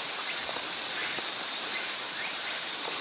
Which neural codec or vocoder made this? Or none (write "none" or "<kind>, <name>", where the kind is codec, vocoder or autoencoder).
none